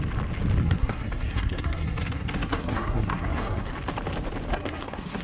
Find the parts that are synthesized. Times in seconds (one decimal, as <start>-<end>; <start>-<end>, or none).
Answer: 0.6-3.7; 4.5-5.2